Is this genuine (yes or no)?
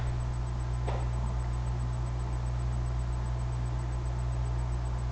yes